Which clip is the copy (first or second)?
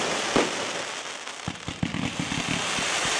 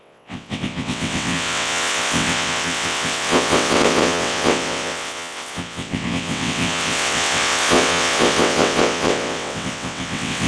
second